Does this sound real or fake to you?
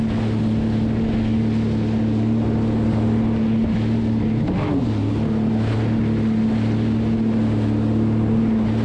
real